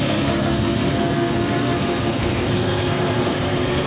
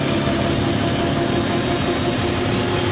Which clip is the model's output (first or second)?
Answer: first